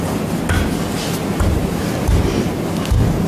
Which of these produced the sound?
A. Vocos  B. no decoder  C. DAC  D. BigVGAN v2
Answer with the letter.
B